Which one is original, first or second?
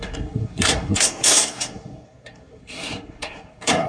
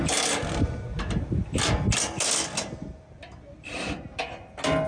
second